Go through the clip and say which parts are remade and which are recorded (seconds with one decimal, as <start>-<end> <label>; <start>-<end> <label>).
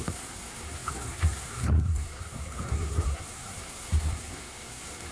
0.0-5.1 remade